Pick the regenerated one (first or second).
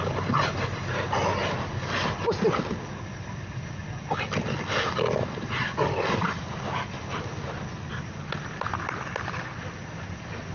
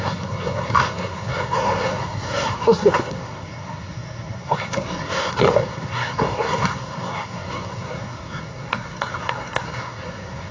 second